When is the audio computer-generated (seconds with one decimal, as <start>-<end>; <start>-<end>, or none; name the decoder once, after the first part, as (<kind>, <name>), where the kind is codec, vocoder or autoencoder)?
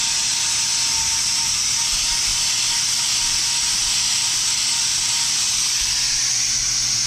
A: none